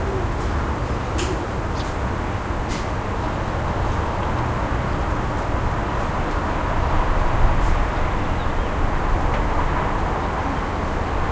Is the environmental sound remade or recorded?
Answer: recorded